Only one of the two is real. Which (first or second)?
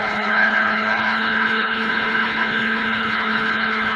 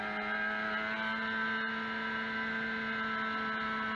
second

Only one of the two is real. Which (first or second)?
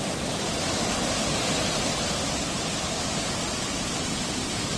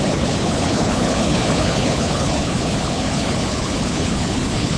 first